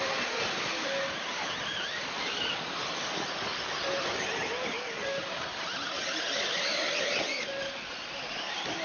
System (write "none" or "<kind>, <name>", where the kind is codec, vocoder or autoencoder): none